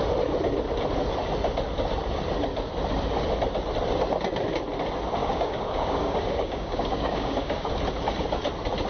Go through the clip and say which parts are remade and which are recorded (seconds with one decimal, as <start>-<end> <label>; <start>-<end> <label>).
0.0-5.2 recorded; 5.2-7.7 remade; 7.7-8.9 recorded